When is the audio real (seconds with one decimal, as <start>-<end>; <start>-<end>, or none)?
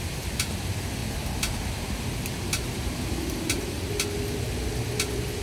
0.0-5.4